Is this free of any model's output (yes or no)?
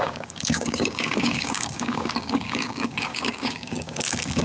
no